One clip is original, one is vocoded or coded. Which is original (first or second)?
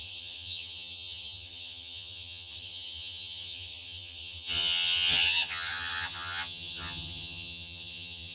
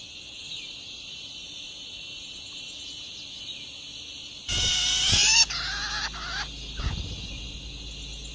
second